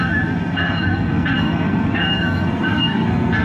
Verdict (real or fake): fake